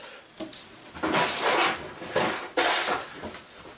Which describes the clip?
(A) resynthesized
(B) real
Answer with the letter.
B